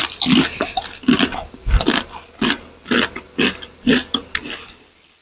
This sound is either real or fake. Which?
real